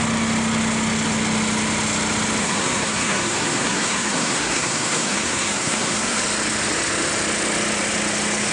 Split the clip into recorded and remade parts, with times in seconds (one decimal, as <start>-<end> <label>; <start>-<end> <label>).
0.0-2.4 recorded; 2.4-6.2 remade; 6.2-8.5 recorded